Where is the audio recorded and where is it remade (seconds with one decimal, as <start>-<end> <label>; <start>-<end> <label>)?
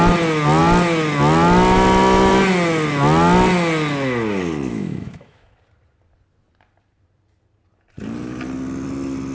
0.0-4.7 recorded; 4.7-5.5 remade; 5.5-9.3 recorded